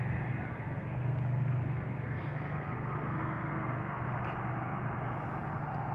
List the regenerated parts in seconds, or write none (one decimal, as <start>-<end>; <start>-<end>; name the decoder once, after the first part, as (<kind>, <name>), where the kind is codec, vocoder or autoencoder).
0.5-4.0 (codec, SNAC)